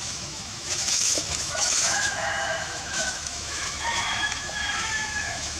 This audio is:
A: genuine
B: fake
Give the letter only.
B